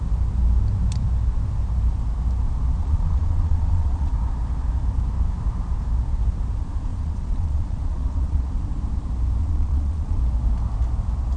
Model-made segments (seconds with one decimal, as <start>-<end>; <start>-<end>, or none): 2.8-4.1; 6.9-8.5; 9.4-10.2